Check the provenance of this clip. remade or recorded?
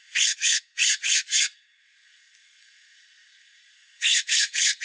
remade